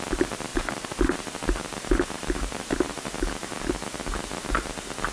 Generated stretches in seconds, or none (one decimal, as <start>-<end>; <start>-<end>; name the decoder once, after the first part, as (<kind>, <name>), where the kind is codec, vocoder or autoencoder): 0.5-3.6 (vocoder, BigVGAN v2)